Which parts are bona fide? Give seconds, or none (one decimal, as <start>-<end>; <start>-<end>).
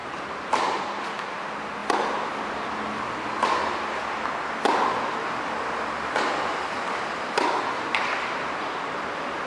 0.8-9.5